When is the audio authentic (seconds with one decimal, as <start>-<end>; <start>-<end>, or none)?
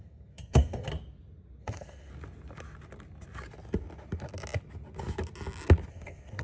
0.9-1.6; 2.1-5.9